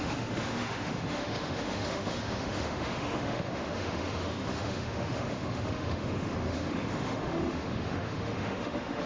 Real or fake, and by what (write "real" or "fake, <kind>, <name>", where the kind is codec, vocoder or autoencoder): fake, autoencoder, DAC-VAE